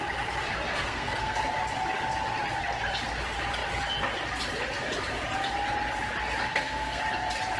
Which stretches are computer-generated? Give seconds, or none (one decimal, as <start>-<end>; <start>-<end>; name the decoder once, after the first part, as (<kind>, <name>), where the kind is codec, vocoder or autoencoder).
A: 0.7-1.4 (codec, SNAC); 6.5-7.0